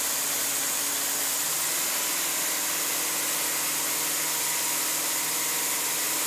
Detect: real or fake real